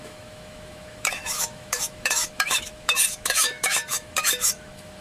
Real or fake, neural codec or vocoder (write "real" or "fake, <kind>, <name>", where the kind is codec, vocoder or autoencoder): fake, autoencoder, DAC-VAE